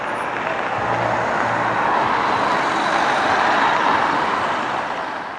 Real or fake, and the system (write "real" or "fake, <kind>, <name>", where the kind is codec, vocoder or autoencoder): real